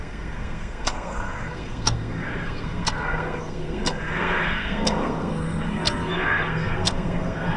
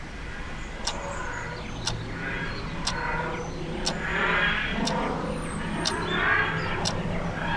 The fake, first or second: first